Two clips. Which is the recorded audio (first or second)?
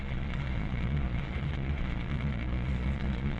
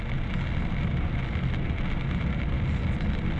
second